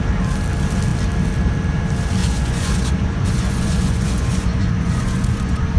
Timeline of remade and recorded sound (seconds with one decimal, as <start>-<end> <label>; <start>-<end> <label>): 0.0-2.2 recorded; 2.2-5.8 remade

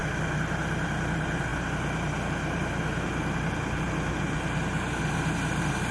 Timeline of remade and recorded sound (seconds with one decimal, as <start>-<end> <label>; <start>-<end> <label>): 0.0-5.9 recorded

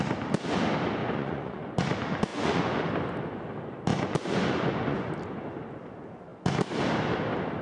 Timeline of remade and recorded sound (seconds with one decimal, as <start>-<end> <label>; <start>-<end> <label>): 0.0-1.0 recorded; 1.0-1.7 remade; 1.7-2.3 recorded; 2.3-2.9 remade; 2.9-3.9 recorded; 3.9-5.1 remade; 5.1-7.6 recorded

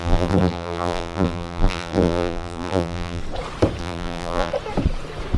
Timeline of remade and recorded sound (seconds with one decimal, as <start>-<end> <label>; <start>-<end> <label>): 0.0-3.2 remade; 3.2-3.8 recorded; 3.8-4.5 remade; 4.5-5.4 recorded